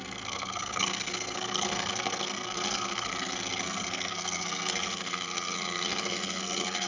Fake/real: fake